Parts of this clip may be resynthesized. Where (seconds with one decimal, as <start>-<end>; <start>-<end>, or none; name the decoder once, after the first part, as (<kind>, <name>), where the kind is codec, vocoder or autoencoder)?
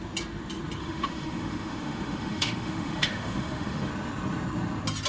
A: 0.8-3.9 (autoencoder, DAC-VAE)